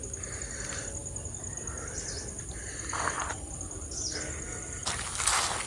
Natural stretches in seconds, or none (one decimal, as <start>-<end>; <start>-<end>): 0.0-5.7